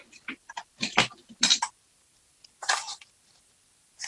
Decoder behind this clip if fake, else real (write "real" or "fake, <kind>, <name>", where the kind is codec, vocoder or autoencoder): fake, vocoder, BigVGAN v2